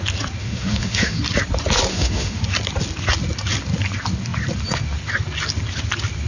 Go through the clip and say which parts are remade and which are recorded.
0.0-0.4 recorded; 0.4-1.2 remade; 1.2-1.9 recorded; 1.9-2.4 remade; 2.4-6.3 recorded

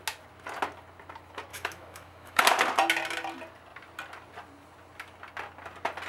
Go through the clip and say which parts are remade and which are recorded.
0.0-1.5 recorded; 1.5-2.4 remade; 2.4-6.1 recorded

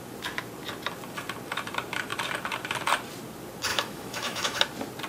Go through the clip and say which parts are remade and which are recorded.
0.0-3.7 recorded; 3.7-4.6 remade; 4.6-5.1 recorded

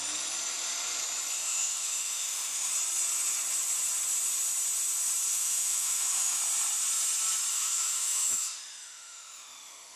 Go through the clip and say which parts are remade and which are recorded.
0.0-1.4 recorded; 1.4-2.7 remade; 2.7-5.3 recorded; 5.3-6.4 remade; 6.4-7.5 recorded; 7.5-10.0 remade

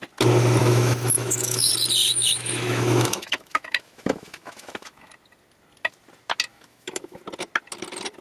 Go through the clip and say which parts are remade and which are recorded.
0.0-0.6 recorded; 0.6-1.7 remade; 1.7-2.1 recorded; 2.1-5.1 remade; 5.1-6.5 recorded; 6.5-7.2 remade; 7.2-8.2 recorded

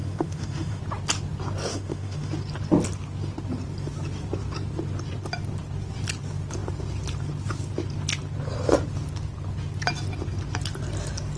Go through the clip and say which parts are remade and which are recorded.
0.0-0.8 remade; 0.8-1.7 recorded; 1.7-2.3 remade; 2.3-11.4 recorded